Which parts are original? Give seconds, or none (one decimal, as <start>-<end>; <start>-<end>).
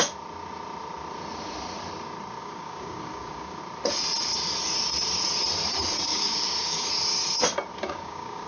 0.0-2.4; 3.6-6.1; 6.9-7.7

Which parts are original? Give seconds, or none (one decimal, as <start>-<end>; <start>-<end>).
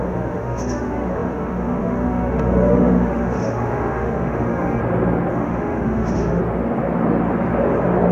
4.8-5.3; 6.4-8.1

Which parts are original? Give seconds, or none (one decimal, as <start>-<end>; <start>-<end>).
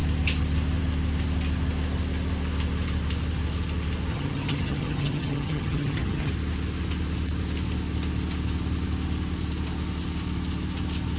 0.0-4.1; 6.3-11.2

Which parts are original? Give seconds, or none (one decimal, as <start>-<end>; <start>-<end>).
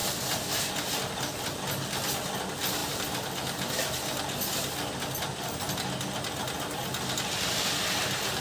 0.0-8.4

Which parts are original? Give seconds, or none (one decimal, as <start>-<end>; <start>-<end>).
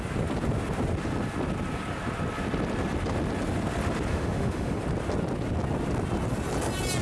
0.0-4.1; 4.8-7.0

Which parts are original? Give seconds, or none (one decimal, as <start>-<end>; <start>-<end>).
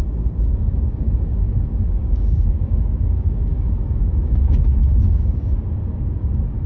none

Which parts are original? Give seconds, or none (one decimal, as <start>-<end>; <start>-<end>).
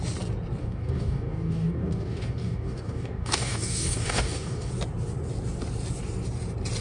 0.0-0.6; 4.7-6.8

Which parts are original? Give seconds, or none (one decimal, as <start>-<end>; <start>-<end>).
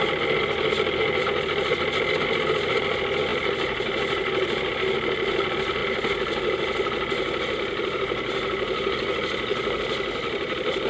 0.0-10.9